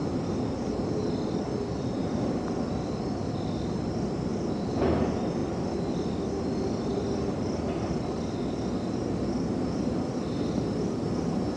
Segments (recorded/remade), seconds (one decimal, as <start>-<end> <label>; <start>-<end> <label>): 0.0-11.6 recorded